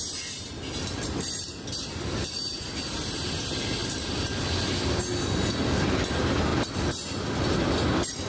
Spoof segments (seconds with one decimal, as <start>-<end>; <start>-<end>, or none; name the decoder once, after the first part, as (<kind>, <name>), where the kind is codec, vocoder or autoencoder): 3.8-6.0 (vocoder, BigVGAN v2)